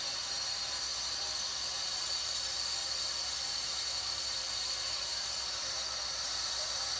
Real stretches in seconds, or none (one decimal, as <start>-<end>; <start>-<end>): none